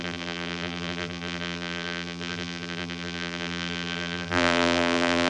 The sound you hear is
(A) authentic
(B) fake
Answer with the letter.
B